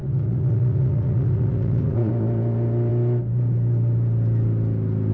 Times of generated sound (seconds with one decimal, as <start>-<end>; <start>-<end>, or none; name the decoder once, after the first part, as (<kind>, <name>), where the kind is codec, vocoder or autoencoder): 0.0-2.1 (vocoder, Vocos)